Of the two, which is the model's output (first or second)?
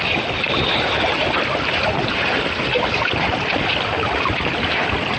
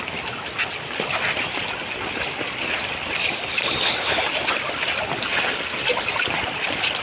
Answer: first